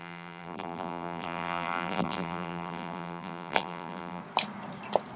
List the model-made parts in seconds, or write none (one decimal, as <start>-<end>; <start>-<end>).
0.0-4.2

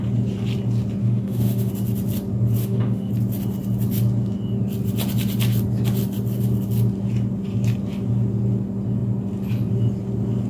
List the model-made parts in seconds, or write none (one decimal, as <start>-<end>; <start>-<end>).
1.0-1.7; 2.6-3.1

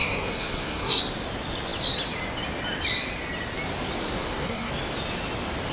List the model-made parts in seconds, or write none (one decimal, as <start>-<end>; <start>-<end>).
0.0-1.0; 4.2-4.7

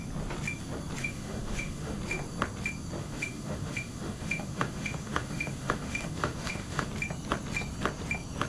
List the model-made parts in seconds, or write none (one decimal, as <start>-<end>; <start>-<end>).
1.0-2.0; 3.0-6.9

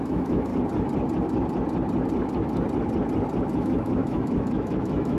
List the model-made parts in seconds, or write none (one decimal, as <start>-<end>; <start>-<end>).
0.0-0.5; 3.6-5.2

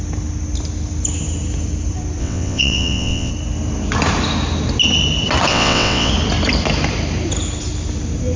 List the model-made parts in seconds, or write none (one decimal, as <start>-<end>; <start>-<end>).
2.2-3.3; 5.5-6.1